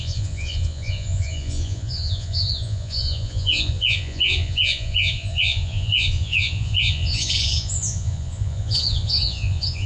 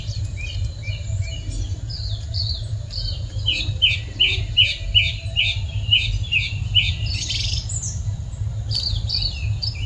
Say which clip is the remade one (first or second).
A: first